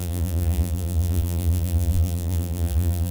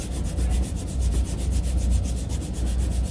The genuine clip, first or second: second